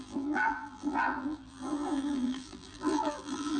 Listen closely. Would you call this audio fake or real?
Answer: fake